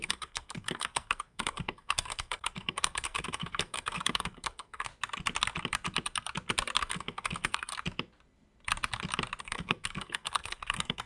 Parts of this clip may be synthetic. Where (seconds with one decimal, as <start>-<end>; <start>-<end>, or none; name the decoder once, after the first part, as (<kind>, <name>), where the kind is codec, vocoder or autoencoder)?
0.0-4.9 (codec, SNAC); 6.8-7.7; 9.4-11.1